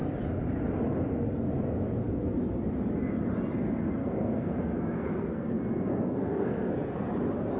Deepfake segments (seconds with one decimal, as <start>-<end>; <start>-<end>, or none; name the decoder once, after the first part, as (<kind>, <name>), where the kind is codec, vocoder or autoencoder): 4.0-6.7 (codec, SNAC)